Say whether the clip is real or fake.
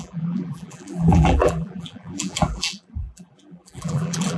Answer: fake